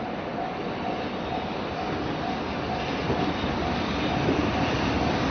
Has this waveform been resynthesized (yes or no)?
no